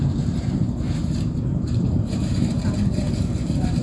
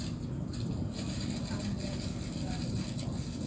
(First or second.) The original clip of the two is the second